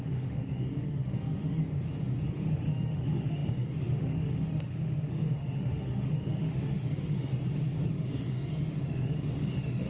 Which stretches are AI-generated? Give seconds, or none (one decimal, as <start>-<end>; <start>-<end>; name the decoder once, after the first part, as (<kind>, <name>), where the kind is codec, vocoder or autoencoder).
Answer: 0.0-1.6 (autoencoder, DAC-VAE); 2.3-7.3; 7.9-9.9